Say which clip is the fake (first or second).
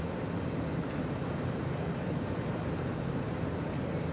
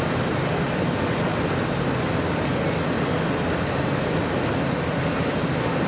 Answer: first